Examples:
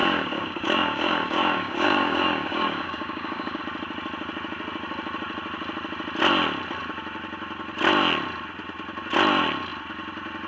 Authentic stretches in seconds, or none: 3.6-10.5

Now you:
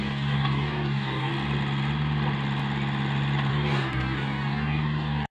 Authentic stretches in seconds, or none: 1.3-3.5

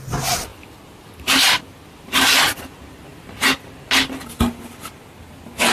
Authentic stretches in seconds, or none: 0.0-5.7

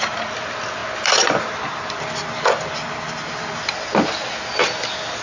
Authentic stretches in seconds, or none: 0.0-5.2

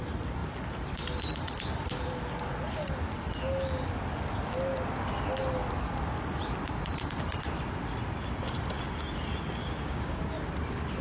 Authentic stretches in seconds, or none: 0.0-9.6; 10.2-11.0

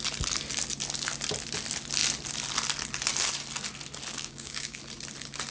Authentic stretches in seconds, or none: 0.0-4.1; 4.8-5.5

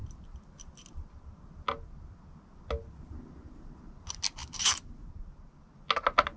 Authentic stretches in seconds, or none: 0.0-6.4

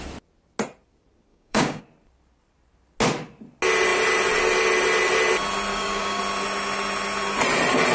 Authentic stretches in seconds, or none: 0.0-1.3; 1.8-5.7; 6.2-7.9